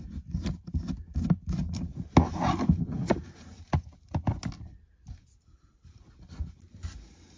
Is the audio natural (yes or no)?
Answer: yes